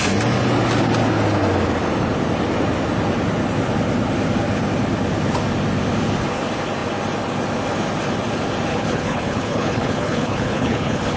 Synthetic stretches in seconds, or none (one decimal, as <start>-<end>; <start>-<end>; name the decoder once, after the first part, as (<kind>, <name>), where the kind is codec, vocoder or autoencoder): 8.7-11.2 (codec, HILCodec)